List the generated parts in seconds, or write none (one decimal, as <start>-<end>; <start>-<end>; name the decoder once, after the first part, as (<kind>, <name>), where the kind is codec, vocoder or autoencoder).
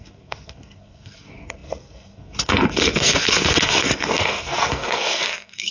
0.0-5.7 (codec, SNAC)